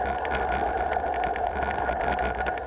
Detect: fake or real real